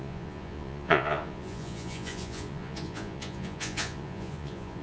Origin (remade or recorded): remade